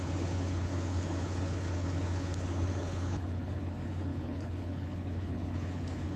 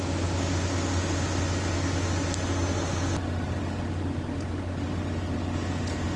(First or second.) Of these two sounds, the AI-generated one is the first